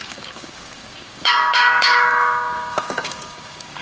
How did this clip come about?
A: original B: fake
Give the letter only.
B